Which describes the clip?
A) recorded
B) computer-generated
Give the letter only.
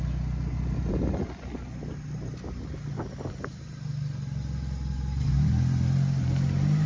A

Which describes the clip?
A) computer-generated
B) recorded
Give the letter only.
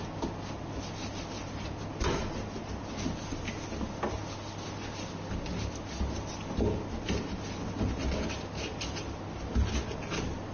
B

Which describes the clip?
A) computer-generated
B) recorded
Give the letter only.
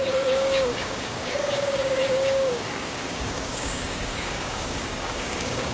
A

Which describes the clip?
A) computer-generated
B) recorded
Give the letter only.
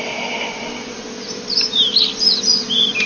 B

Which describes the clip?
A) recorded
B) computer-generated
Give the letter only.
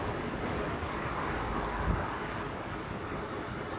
B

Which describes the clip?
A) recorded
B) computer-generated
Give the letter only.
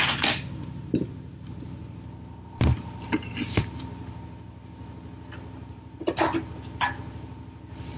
A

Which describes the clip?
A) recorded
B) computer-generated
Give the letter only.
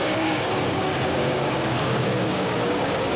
B